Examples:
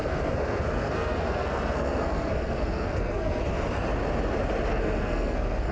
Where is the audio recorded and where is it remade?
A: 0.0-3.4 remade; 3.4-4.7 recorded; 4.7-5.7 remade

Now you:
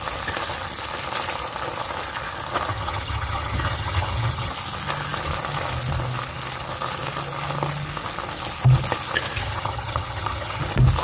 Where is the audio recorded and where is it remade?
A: 0.0-2.7 recorded; 2.7-4.5 remade; 4.5-9.4 recorded; 9.4-10.6 remade; 10.6-11.0 recorded

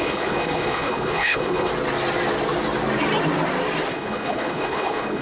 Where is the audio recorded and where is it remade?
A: 0.0-1.7 remade; 1.7-3.9 recorded; 3.9-5.2 remade

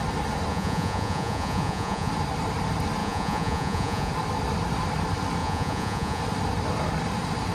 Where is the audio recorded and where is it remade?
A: 0.0-0.5 recorded; 0.5-2.1 remade; 2.1-3.0 recorded; 3.0-4.1 remade; 4.1-5.4 recorded; 5.4-6.2 remade; 6.2-7.5 recorded

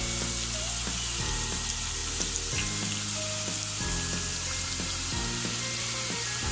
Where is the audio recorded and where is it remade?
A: 0.0-4.3 recorded; 4.3-6.5 remade

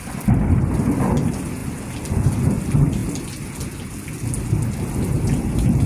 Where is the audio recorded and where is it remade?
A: 0.0-5.9 recorded